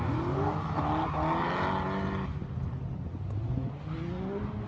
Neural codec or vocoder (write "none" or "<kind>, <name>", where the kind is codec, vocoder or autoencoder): none